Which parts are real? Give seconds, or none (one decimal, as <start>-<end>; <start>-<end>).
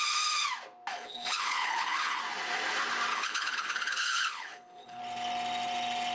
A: 0.0-0.9; 2.2-3.1; 5.0-6.1